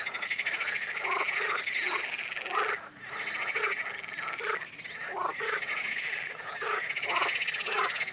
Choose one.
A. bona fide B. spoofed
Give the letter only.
A